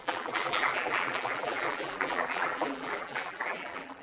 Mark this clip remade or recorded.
remade